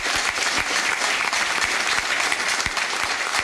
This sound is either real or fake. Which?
real